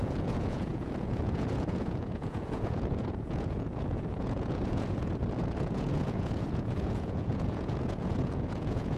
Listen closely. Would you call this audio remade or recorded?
remade